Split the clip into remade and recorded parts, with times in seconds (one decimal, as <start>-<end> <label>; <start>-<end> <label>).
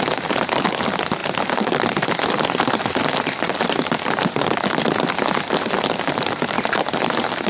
0.0-7.5 recorded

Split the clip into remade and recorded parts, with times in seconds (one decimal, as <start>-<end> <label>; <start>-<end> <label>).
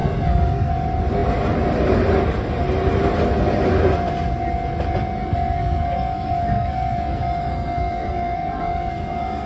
0.0-0.7 remade; 0.7-5.2 recorded; 5.2-9.5 remade